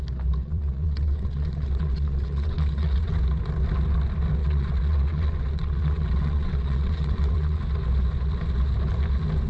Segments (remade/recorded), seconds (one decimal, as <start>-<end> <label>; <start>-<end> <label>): 0.0-0.4 recorded; 0.4-3.1 remade; 3.1-4.4 recorded; 4.4-7.6 remade; 7.6-9.5 recorded